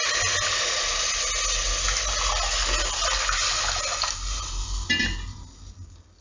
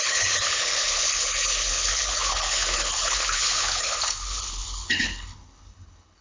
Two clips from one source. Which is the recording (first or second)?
first